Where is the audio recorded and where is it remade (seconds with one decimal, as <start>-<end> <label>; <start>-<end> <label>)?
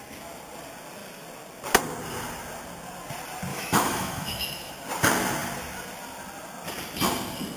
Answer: 0.0-3.5 recorded; 3.5-4.7 remade; 4.7-7.6 recorded